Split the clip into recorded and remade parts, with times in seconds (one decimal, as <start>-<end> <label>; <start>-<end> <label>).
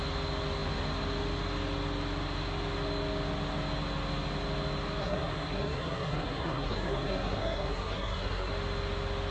0.0-5.0 recorded; 5.0-8.5 remade; 8.5-9.3 recorded